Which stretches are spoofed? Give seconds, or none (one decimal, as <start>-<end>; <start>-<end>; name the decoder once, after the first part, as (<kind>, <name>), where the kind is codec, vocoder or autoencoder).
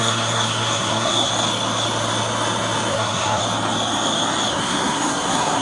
0.0-1.3 (codec, SNAC); 2.9-3.4; 4.5-5.6